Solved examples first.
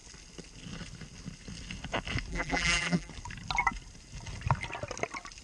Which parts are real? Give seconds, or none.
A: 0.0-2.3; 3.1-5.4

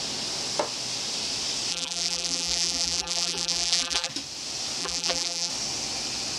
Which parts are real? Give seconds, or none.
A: 0.0-1.7; 4.1-4.8; 5.5-6.4

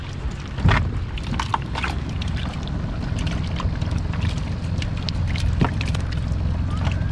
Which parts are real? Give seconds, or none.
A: 0.0-1.5; 2.4-7.1